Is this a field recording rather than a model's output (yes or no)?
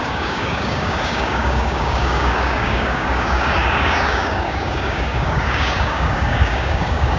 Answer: no